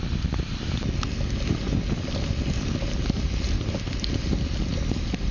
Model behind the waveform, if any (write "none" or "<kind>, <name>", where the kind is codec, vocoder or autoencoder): none